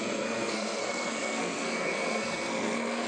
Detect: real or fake fake